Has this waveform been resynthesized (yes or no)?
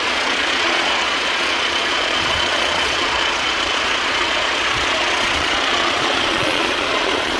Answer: yes